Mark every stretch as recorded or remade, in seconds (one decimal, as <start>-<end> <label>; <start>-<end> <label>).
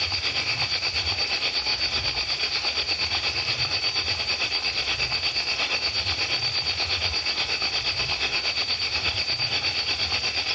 0.0-10.5 recorded